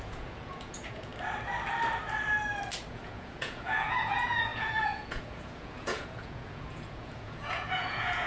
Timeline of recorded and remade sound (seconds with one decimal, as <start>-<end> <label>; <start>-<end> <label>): 0.0-1.1 remade; 1.1-2.9 recorded; 2.9-8.3 remade